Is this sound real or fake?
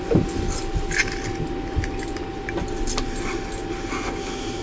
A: real